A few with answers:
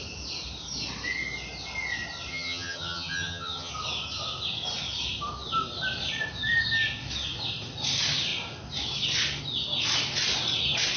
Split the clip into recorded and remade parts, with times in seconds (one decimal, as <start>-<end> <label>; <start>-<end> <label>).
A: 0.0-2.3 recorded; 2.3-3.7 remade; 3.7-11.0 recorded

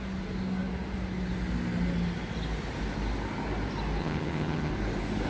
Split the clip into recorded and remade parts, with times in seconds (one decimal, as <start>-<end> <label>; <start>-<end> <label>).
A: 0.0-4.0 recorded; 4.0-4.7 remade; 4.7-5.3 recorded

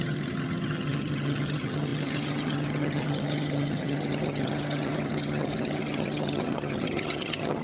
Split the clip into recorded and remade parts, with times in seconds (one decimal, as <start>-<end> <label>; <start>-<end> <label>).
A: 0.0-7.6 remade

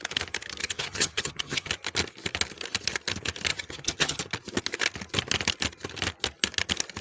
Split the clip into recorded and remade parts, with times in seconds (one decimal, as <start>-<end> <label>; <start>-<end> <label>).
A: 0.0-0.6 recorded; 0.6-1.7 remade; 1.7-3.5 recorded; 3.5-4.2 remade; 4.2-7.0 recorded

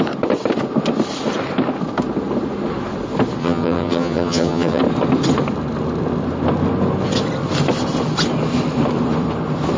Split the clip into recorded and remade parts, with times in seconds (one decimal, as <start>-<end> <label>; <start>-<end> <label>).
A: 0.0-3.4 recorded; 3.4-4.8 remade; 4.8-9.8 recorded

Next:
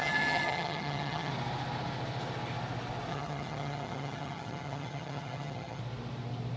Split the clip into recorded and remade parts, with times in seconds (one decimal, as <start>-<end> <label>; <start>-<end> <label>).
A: 0.0-1.3 remade; 1.3-3.1 recorded; 3.1-5.8 remade; 5.8-6.6 recorded